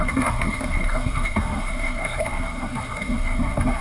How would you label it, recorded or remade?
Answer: remade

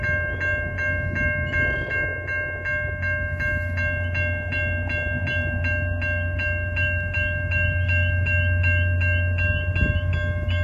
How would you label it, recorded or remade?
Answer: recorded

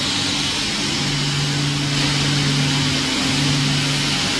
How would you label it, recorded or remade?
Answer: recorded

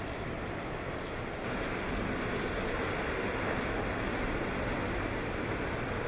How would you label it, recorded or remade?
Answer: recorded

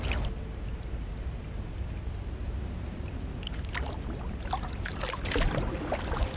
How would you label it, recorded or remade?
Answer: recorded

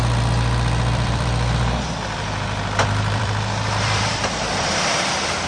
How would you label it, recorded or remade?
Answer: remade